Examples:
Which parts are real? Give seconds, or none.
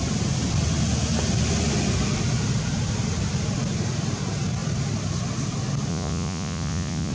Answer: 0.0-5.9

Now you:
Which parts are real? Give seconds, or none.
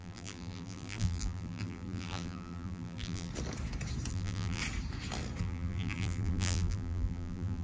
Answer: 3.3-4.1; 4.6-5.4